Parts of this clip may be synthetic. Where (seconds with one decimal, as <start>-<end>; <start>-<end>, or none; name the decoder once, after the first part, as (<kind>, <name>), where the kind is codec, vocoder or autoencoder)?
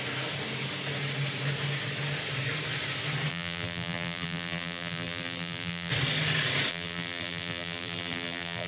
3.3-5.9 (vocoder, BigVGAN v2); 6.7-8.7